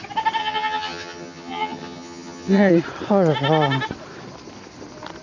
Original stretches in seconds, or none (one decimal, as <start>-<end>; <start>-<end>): 0.0-0.4; 2.7-5.2